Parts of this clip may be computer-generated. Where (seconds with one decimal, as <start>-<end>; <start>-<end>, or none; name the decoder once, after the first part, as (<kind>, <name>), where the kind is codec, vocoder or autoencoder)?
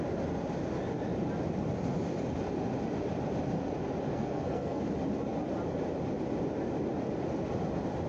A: 4.1-4.8 (codec, SNAC)